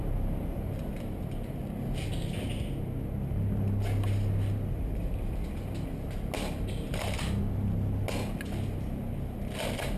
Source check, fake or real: real